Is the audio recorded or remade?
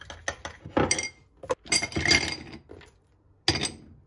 recorded